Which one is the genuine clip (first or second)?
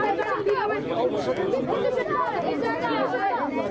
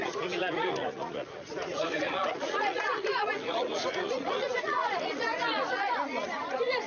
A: first